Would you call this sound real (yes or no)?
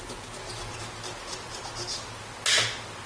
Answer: yes